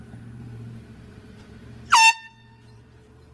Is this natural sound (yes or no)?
no